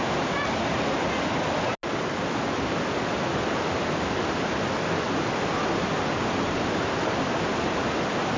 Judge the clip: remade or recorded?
recorded